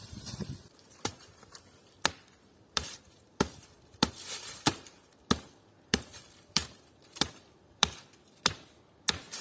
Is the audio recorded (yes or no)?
no